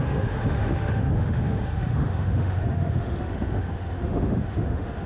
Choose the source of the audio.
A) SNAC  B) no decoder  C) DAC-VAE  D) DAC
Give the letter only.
C